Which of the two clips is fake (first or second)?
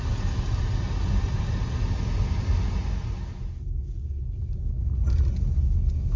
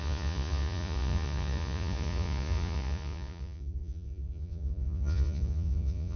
second